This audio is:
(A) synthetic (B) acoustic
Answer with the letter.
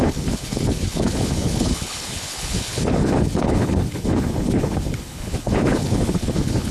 A